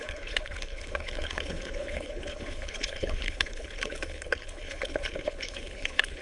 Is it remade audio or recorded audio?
remade